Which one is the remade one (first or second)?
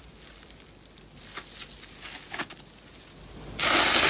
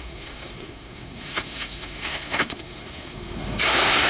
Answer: second